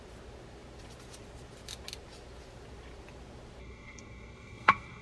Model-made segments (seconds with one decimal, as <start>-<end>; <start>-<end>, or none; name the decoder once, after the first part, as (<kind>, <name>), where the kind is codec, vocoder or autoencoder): 3.6-5.0 (codec, SNAC)